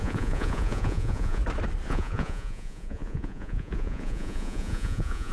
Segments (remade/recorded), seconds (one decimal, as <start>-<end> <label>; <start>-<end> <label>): 0.0-1.4 remade; 1.4-1.9 recorded; 1.9-5.3 remade